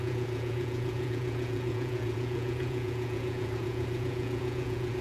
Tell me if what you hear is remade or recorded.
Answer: remade